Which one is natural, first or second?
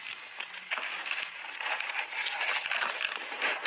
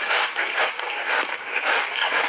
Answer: first